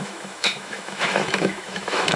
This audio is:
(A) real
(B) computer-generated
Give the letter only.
B